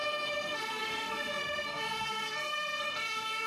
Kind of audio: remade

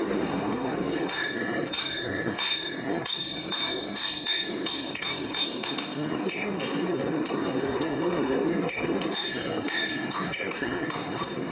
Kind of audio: remade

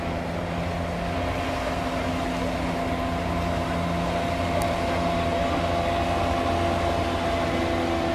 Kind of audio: recorded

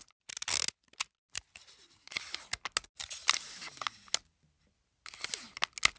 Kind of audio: recorded